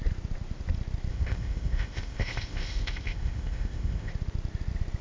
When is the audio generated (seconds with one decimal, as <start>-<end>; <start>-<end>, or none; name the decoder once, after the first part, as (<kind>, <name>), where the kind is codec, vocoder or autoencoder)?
1.1-4.1 (codec, ZipCodec)